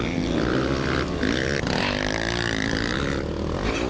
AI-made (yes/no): no